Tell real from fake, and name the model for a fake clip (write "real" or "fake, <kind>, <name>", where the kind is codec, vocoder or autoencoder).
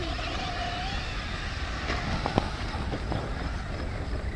real